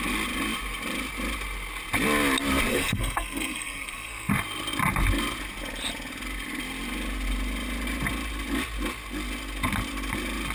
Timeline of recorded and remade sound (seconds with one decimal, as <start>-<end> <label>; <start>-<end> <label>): 0.0-2.7 recorded; 2.7-4.3 remade; 4.3-10.5 recorded